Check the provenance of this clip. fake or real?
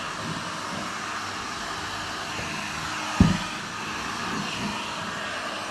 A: real